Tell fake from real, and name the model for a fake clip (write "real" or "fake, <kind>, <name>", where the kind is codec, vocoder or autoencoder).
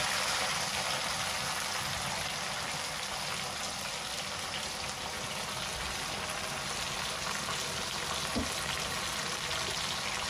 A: real